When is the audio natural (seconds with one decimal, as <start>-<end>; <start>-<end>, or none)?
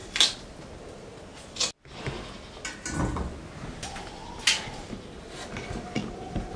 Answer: 0.0-6.6